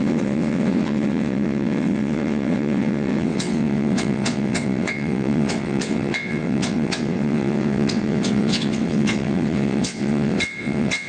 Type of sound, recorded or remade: remade